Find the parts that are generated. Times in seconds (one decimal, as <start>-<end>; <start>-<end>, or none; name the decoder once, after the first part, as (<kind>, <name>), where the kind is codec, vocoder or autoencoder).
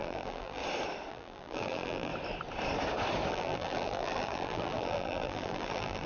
0.0-0.6 (vocoder, BigVGAN v2); 1.1-2.1; 3.3-6.1